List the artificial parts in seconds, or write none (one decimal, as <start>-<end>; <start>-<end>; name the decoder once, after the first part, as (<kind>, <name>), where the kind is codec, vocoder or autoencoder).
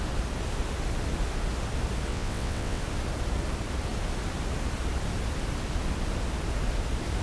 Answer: 2.1-2.8 (vocoder, WaveNeXt)